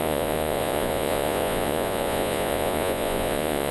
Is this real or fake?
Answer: fake